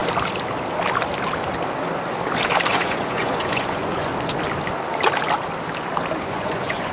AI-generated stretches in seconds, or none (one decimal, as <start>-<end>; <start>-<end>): 2.7-4.1; 6.2-6.9